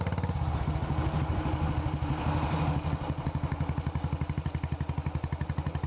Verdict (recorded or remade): recorded